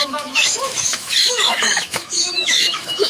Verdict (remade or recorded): remade